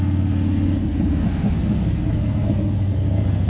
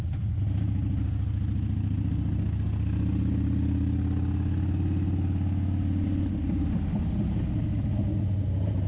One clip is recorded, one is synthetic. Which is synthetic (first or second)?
first